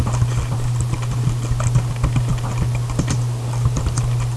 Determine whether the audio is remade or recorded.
recorded